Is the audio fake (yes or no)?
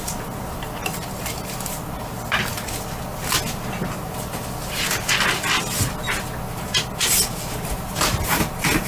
no